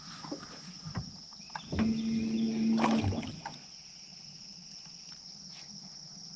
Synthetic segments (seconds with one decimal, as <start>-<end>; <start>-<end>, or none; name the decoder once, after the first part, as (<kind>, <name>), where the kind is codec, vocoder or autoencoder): none